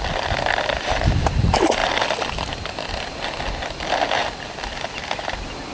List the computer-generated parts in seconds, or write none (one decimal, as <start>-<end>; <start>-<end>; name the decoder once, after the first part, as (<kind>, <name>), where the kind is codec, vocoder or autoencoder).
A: none